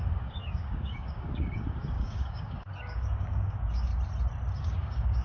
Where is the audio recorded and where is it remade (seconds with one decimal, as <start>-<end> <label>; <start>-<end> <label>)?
0.0-3.9 remade; 3.9-4.6 recorded; 4.6-5.2 remade